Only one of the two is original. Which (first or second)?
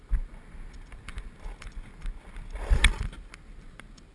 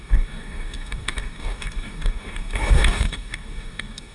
first